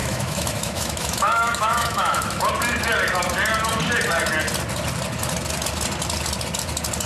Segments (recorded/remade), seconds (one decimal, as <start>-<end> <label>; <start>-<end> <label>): 0.0-2.5 remade; 2.5-7.1 recorded